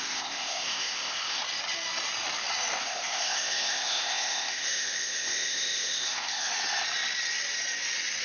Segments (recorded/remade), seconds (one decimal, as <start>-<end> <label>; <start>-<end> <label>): 0.0-1.4 remade; 1.4-2.8 recorded; 2.8-6.5 remade; 6.5-8.2 recorded

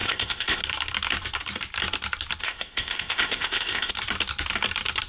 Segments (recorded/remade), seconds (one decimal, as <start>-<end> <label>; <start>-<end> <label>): 0.0-0.6 remade; 0.6-2.4 recorded; 2.4-3.9 remade; 3.9-5.1 recorded